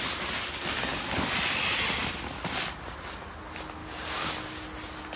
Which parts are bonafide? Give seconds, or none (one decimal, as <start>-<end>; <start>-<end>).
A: 0.0-3.8; 4.3-5.2